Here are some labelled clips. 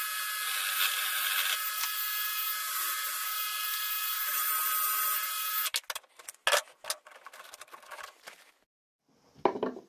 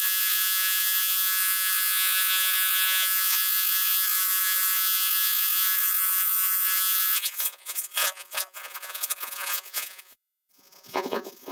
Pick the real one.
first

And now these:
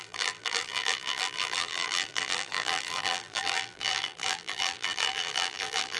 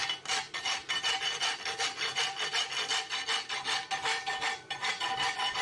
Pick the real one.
second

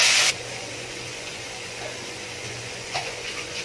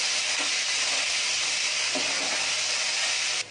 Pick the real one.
second